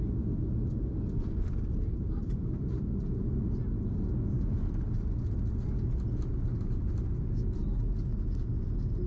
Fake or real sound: real